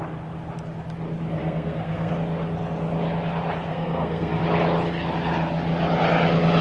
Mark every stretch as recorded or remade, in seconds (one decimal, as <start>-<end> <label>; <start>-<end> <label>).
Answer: 0.0-1.4 recorded; 1.4-2.1 remade; 2.1-3.7 recorded; 3.7-4.4 remade; 4.4-6.6 recorded